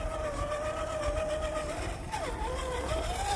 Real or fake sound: real